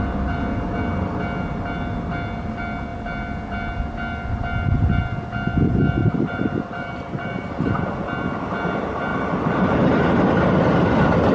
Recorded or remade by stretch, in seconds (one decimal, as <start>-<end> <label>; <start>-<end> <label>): 0.0-6.0 recorded; 6.0-7.9 remade; 7.9-9.1 recorded; 9.1-9.9 remade; 9.9-11.3 recorded